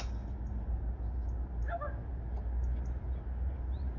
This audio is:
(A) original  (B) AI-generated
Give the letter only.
A